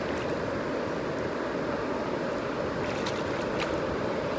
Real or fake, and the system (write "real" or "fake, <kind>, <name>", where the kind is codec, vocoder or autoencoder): real